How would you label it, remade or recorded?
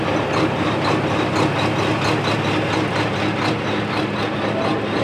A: recorded